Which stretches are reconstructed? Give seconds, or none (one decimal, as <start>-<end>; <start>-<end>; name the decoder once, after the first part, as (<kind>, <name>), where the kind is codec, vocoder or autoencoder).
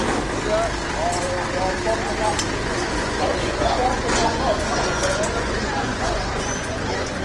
2.6-7.2 (vocoder, Vocos)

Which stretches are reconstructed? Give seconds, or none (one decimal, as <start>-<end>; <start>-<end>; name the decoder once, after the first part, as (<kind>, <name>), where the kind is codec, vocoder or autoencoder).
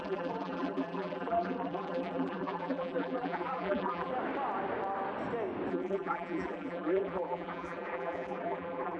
0.0-4.1 (vocoder, BigVGAN v2); 5.7-9.0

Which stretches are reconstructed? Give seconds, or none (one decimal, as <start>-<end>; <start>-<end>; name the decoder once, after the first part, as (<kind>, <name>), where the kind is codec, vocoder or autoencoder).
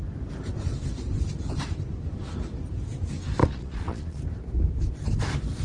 3.4-4.2 (vocoder, Vocos)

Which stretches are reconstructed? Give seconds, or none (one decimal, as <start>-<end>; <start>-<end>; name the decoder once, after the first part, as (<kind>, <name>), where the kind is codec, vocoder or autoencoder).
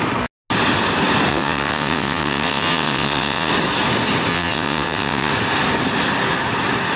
1.3-3.5 (vocoder, WaveNeXt); 4.3-5.3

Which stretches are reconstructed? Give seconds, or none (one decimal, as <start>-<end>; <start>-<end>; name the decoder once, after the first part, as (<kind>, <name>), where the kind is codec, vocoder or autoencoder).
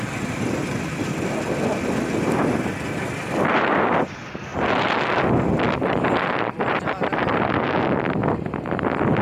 none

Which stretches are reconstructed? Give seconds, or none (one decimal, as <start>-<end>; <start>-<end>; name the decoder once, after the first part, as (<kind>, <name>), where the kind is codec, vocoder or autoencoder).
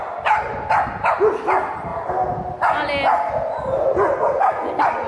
none